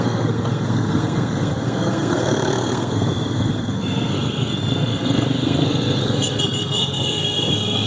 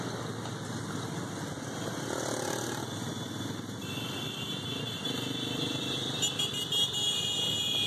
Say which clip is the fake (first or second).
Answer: first